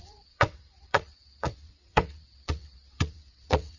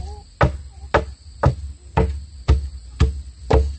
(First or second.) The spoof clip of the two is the first